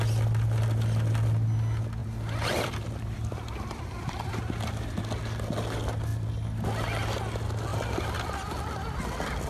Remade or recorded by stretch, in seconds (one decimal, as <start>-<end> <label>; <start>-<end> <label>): 0.0-2.0 recorded; 2.0-4.3 remade; 4.3-9.5 recorded